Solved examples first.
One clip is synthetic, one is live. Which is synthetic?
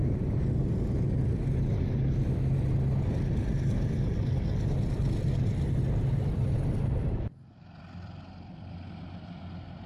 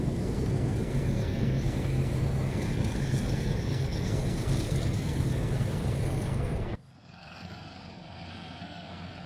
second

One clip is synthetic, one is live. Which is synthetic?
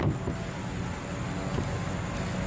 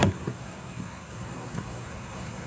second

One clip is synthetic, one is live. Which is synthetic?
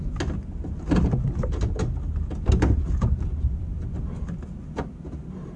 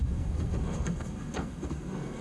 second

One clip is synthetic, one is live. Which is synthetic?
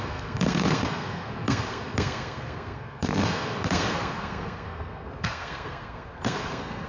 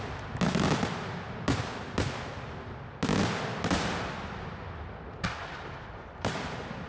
first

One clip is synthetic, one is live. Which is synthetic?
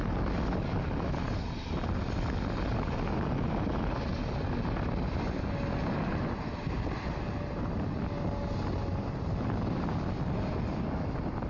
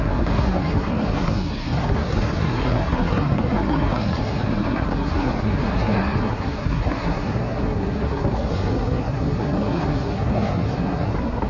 second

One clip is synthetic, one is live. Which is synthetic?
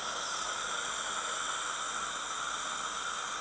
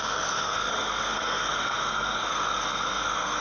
second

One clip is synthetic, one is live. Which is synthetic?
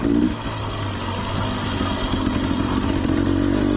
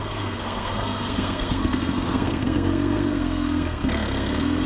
second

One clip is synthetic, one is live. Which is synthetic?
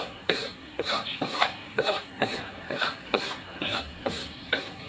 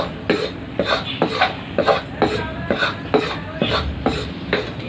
first